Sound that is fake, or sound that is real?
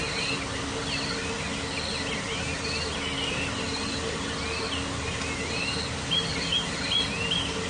real